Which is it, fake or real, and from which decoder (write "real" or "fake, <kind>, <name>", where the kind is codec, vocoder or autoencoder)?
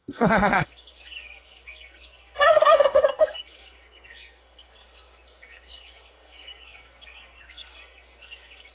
fake, codec, SNAC